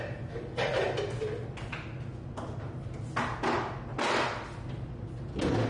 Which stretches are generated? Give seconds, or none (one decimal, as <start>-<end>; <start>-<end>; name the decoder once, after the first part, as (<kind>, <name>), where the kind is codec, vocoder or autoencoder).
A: none